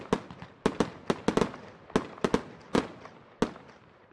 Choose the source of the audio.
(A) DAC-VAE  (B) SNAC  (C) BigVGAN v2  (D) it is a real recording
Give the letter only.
D